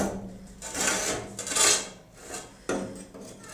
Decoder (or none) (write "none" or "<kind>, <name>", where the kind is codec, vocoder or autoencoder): none